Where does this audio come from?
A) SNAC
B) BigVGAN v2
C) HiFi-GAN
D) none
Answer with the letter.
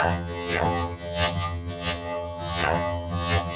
C